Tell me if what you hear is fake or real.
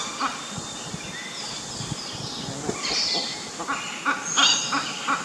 real